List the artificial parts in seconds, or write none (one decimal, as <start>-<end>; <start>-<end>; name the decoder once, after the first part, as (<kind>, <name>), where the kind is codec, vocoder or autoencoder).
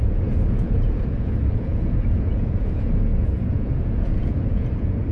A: 0.0-5.1 (vocoder, Vocos)